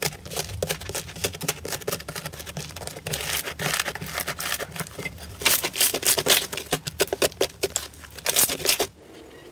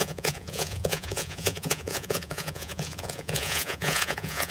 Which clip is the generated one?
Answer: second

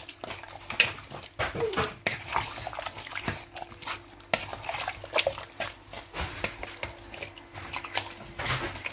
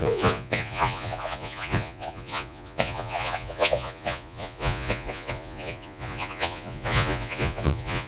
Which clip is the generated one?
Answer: second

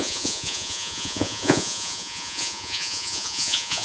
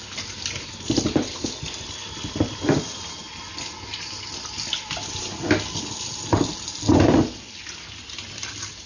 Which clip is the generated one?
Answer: first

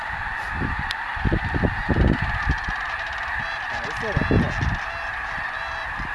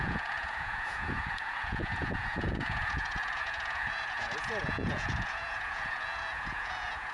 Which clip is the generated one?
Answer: second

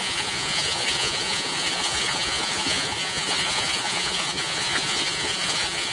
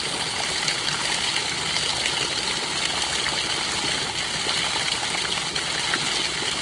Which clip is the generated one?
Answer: first